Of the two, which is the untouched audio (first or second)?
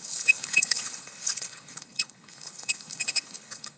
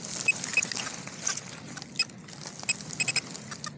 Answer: second